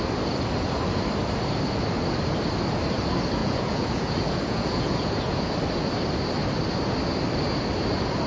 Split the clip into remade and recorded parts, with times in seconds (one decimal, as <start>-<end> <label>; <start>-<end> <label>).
0.0-3.4 recorded; 3.4-5.5 remade; 5.5-8.3 recorded